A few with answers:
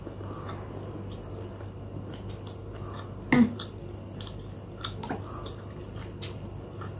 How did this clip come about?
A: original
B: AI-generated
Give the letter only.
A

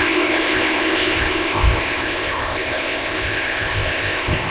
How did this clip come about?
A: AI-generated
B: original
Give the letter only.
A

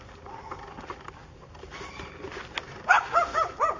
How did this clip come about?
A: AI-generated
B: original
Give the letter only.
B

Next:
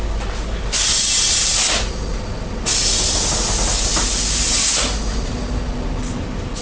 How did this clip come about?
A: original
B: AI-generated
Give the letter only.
A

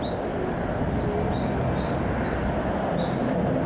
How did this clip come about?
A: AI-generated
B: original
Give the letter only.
B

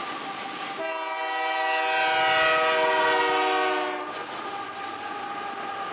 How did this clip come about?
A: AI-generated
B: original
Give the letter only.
B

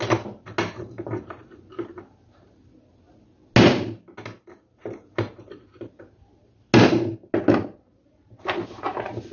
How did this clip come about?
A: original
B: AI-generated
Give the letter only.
A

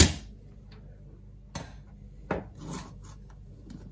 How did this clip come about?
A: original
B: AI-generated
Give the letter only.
A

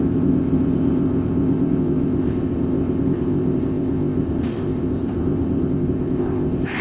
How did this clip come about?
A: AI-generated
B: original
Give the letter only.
A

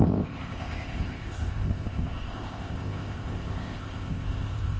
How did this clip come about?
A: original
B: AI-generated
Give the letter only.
B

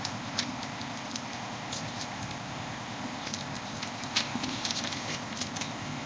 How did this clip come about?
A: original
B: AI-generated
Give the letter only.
B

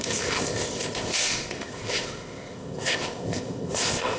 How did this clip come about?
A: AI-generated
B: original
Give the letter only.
A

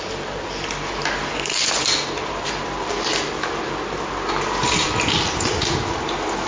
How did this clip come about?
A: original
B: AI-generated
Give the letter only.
A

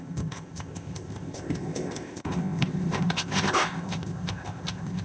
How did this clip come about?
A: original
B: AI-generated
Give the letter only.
B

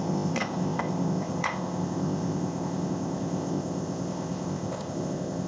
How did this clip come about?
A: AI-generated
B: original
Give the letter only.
A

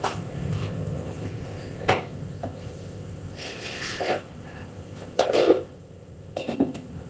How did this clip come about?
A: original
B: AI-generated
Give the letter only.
B